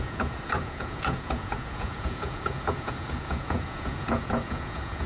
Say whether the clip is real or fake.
fake